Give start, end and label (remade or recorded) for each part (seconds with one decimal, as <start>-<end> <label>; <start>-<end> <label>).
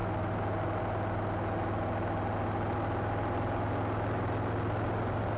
0.0-5.4 recorded